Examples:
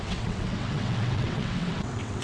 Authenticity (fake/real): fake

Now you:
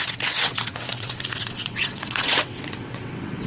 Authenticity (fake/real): fake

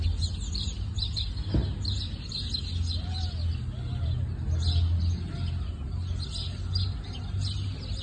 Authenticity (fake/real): real